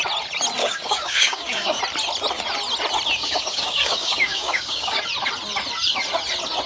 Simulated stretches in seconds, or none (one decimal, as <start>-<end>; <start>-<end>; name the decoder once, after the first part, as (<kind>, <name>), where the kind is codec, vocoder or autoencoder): 0.6-1.8 (codec, DAC); 3.2-5.0